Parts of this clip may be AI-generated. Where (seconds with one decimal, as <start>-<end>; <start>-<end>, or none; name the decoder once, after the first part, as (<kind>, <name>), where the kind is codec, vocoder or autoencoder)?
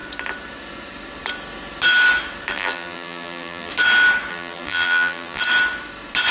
2.5-3.7 (vocoder, BigVGAN v2); 4.3-5.4